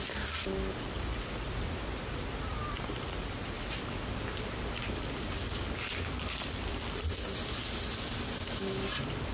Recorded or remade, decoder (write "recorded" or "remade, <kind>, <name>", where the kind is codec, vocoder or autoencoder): recorded